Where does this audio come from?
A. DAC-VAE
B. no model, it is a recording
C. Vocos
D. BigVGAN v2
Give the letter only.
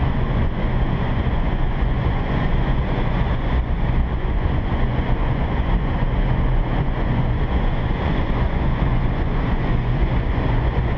C